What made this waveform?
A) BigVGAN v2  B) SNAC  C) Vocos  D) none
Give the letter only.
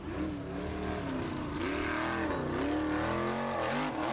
D